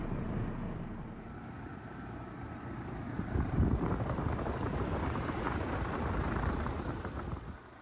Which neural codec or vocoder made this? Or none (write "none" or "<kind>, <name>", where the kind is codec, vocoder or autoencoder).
vocoder, BigVGAN v2